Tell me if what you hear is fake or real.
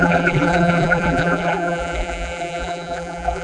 fake